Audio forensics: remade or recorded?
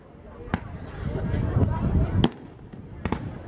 recorded